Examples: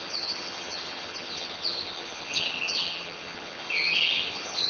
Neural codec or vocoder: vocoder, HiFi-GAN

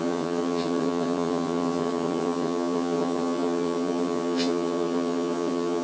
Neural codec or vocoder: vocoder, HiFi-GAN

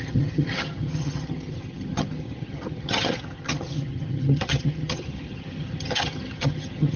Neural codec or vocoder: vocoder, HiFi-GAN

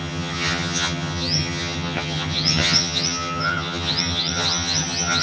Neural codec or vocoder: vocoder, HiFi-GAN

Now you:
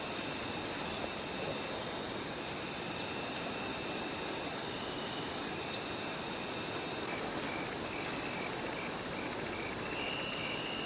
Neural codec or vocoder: none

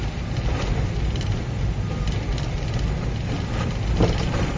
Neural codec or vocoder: none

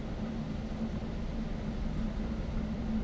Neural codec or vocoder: none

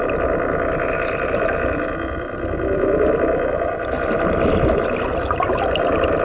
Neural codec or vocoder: none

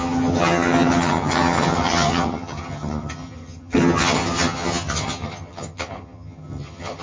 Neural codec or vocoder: vocoder, HiFi-GAN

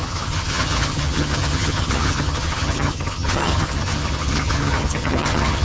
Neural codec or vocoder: vocoder, HiFi-GAN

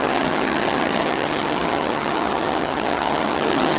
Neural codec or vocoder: vocoder, HiFi-GAN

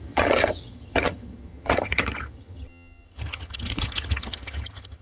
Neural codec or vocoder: vocoder, HiFi-GAN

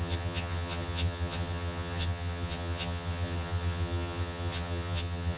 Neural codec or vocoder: vocoder, HiFi-GAN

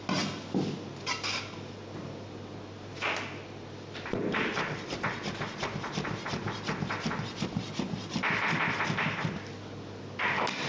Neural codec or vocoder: none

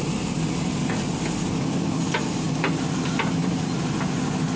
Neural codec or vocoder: none